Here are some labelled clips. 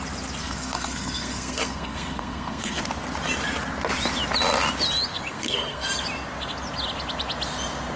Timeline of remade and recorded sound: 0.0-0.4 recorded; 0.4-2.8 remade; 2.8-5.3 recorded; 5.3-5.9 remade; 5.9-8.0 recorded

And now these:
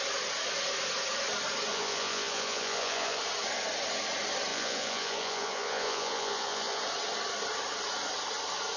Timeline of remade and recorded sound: 0.0-1.7 recorded; 1.7-3.2 remade; 3.2-4.5 recorded; 4.5-6.8 remade; 6.8-8.8 recorded

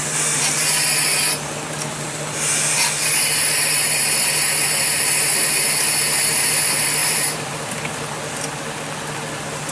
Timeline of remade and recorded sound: 0.0-7.0 recorded; 7.0-8.0 remade; 8.0-9.7 recorded

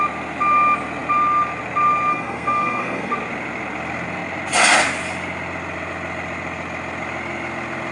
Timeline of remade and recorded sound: 0.0-2.1 recorded; 2.1-3.1 remade; 3.1-7.9 recorded

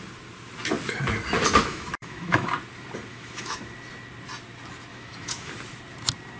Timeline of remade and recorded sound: 0.0-1.7 recorded; 1.7-2.5 remade; 2.5-3.1 recorded; 3.1-3.6 remade; 3.6-4.9 recorded; 4.9-5.5 remade; 5.5-6.4 recorded